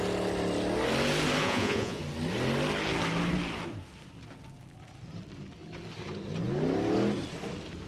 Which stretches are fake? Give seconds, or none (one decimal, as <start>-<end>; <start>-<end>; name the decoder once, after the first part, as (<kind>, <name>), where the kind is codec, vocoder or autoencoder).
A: 1.4-2.0 (vocoder, Vocos)